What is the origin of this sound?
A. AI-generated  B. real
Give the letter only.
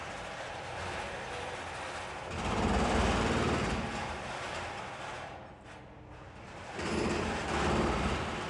B